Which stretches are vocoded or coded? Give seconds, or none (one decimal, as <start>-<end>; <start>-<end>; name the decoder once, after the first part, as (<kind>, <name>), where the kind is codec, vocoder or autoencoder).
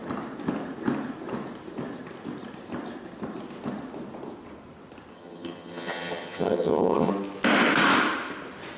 5.1-7.1 (vocoder, HiFi-GAN)